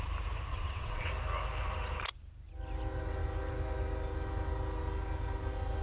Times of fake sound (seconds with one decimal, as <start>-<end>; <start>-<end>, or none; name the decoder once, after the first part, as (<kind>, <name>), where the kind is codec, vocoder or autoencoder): 0.5-1.1 (vocoder, WaveNeXt)